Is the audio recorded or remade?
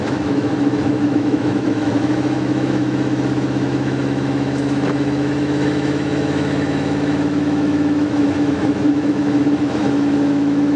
remade